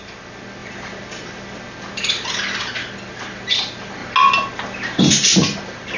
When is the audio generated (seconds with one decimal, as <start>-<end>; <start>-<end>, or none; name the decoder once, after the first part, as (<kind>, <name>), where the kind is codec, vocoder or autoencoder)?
0.0-4.0 (vocoder, BigVGAN v2); 5.0-6.0